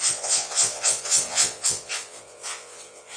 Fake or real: fake